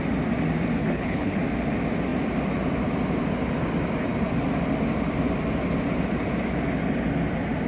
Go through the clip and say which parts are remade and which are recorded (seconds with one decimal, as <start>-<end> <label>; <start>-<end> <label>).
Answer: 0.0-0.8 recorded; 0.8-1.4 remade; 1.4-7.7 recorded